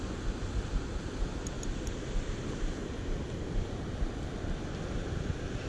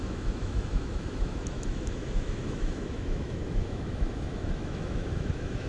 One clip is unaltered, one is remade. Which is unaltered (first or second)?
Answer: first